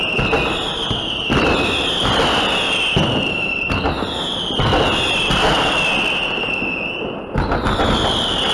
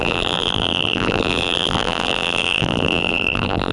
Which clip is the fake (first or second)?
second